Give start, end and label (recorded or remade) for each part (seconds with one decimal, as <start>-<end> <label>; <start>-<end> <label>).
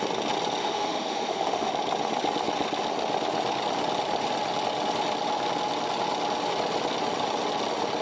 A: 0.0-0.6 recorded; 0.6-1.7 remade; 1.7-8.0 recorded